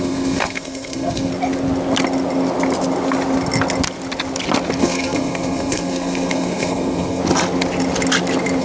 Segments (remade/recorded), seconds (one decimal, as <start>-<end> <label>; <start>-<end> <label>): 0.0-1.3 remade; 1.3-4.8 recorded; 4.8-7.2 remade; 7.2-8.6 recorded